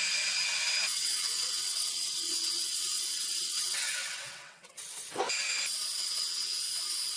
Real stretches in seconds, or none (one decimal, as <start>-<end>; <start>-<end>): 0.0-0.9; 5.2-6.0; 6.6-7.2